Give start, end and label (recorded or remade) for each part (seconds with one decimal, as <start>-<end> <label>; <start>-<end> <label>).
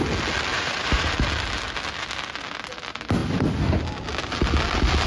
0.0-0.5 recorded; 0.5-1.1 remade; 1.1-5.1 recorded